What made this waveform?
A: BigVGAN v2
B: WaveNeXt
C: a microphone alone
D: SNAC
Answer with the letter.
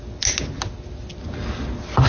C